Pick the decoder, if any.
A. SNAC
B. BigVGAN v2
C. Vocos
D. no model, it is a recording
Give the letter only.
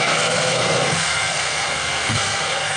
A